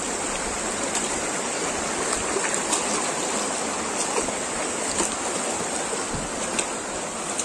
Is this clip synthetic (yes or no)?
no